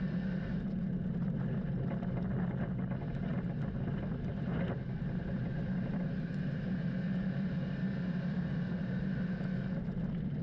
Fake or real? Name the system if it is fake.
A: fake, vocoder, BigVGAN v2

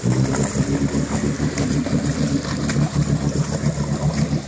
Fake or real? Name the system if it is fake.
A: real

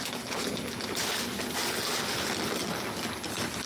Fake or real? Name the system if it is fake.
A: real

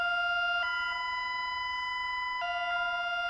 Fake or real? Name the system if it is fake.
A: real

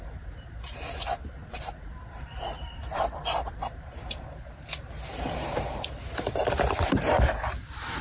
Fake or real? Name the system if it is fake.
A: fake, vocoder, BigVGAN v2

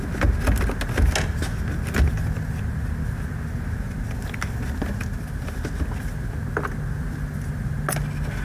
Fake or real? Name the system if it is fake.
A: real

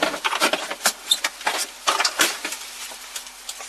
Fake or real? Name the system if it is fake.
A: real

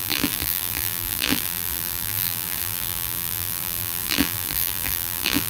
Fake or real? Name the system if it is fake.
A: fake, vocoder, BigVGAN v2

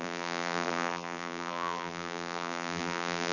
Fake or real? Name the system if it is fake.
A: fake, vocoder, BigVGAN v2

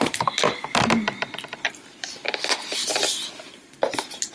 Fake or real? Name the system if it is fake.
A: real